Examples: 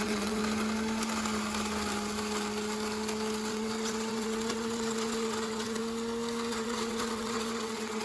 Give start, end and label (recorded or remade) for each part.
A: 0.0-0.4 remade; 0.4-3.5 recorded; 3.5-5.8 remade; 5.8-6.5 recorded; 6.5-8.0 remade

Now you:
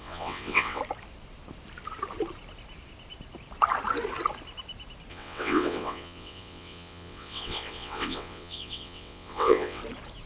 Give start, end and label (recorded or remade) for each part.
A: 0.0-0.8 remade; 0.8-5.1 recorded; 5.1-9.8 remade; 9.8-10.3 recorded

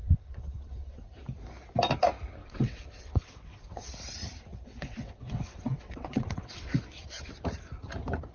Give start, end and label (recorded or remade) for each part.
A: 0.0-1.0 remade; 1.0-2.4 recorded; 2.4-3.9 remade; 3.9-4.5 recorded; 4.5-6.8 remade; 6.8-8.3 recorded

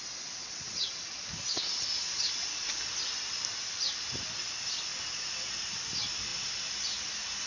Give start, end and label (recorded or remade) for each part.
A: 0.0-0.4 recorded; 0.4-1.0 remade; 1.0-7.5 recorded